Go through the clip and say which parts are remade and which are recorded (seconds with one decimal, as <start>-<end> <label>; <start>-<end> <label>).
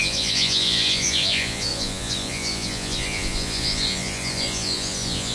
0.0-5.3 remade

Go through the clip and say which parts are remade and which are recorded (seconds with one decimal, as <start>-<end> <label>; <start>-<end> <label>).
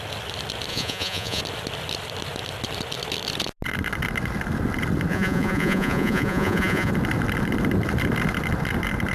0.0-0.7 recorded; 0.7-1.4 remade; 1.4-5.1 recorded; 5.1-6.9 remade; 6.9-9.1 recorded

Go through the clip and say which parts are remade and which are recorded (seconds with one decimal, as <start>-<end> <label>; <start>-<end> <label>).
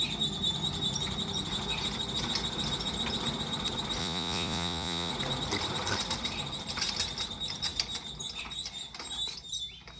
0.0-4.0 recorded; 4.0-5.1 remade; 5.1-10.0 recorded